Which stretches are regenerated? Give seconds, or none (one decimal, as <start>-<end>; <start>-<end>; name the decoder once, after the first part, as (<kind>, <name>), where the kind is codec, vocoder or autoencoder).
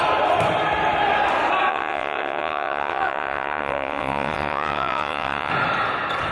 1.7-5.5 (vocoder, WaveNeXt)